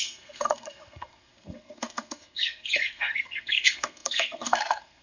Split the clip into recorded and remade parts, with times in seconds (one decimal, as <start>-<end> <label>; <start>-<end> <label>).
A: 0.0-5.0 remade